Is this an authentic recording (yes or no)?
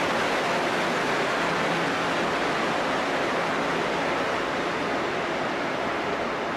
yes